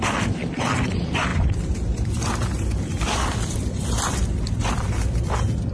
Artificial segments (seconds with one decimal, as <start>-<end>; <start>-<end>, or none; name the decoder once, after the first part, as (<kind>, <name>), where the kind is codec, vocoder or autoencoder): 0.0-5.7 (vocoder, BigVGAN v2)